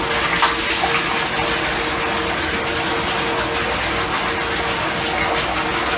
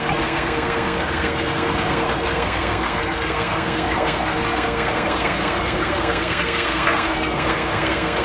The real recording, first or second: first